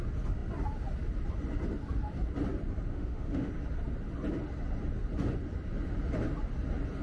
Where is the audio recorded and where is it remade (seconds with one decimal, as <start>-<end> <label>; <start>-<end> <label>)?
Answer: 0.0-2.9 recorded; 2.9-3.5 remade; 3.5-7.0 recorded